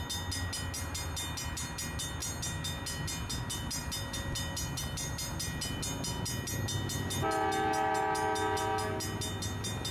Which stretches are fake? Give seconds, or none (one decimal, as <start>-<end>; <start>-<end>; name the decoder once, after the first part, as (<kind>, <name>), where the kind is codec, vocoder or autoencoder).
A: none